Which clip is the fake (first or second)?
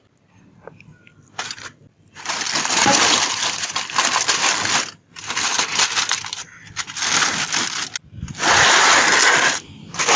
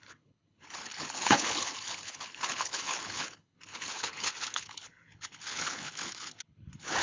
second